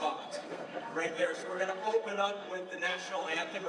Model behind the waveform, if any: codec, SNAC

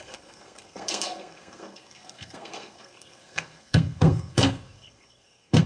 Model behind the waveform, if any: codec, SNAC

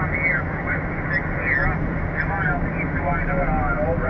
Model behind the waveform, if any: none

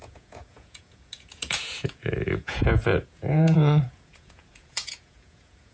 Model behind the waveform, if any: vocoder, Vocos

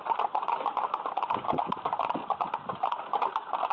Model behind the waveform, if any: none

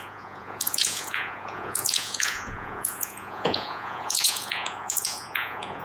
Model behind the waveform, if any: vocoder, Vocos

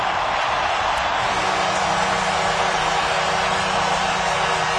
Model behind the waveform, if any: none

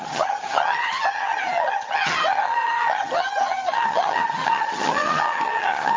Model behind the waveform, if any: vocoder, HiFi-GAN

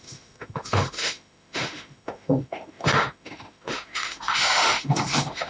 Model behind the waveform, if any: autoencoder, DAC-VAE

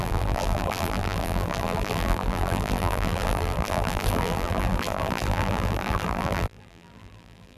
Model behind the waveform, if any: vocoder, BigVGAN v2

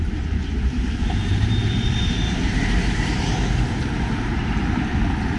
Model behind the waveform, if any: vocoder, BigVGAN v2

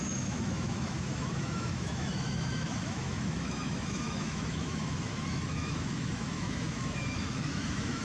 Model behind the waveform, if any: autoencoder, DAC-VAE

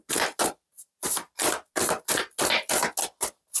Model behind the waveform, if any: none